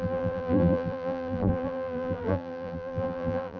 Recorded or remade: remade